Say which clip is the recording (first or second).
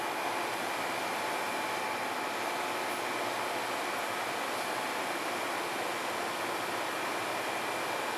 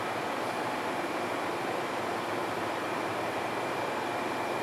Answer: first